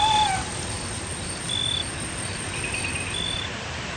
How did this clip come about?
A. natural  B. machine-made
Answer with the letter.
A